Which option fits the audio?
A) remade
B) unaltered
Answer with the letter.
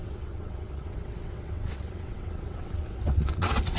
A